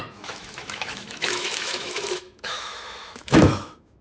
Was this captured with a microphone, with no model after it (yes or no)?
no